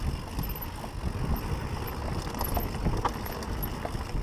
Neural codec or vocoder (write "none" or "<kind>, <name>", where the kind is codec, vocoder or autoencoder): none